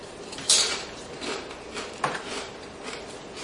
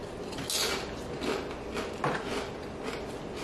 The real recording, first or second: second